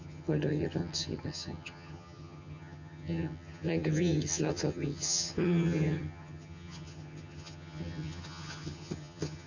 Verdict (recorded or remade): remade